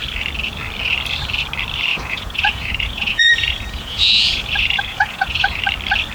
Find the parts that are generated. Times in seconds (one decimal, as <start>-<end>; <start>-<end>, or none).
1.9-5.6